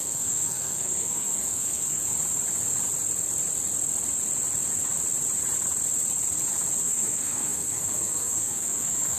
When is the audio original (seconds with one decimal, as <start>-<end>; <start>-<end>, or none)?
2.0-6.8

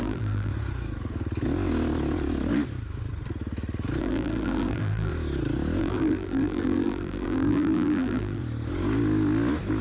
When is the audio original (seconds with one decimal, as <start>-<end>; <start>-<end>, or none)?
0.5-4.0; 5.1-5.8; 8.4-9.8